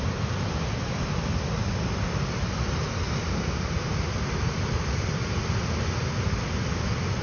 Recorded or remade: recorded